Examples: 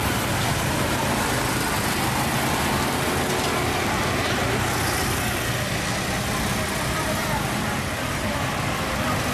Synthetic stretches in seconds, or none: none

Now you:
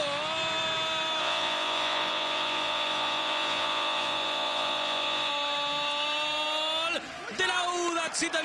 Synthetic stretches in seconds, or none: 1.2-5.3 (vocoder, Vocos)

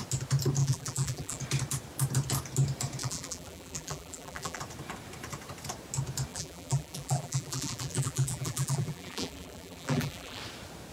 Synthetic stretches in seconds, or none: 0.6-1.4 (vocoder, BigVGAN v2); 3.0-4.6; 6.3-10.4

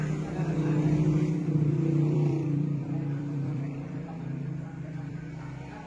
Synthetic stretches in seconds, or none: 1.7-5.2 (vocoder, BigVGAN v2)

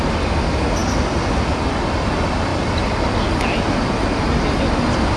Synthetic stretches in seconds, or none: none

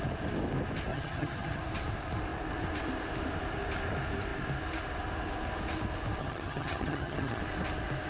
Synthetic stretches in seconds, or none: 0.9-1.6 (vocoder, HiFi-GAN); 6.2-7.4

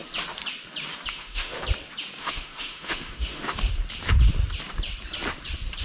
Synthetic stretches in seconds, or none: 1.1-1.6 (autoencoder, DAC-VAE); 2.2-3.7

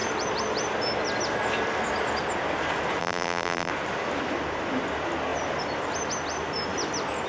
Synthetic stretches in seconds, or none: 3.0-3.7 (vocoder, BigVGAN v2)